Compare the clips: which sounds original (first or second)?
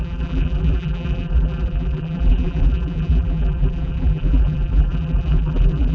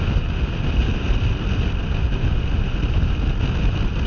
second